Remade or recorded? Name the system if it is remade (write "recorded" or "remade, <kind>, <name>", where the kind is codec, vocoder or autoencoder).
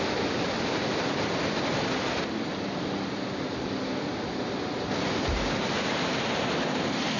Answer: recorded